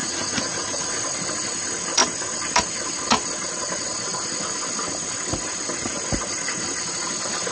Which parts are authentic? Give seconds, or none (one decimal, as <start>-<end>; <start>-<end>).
1.0-7.5